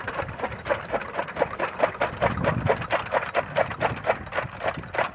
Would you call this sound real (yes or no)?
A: yes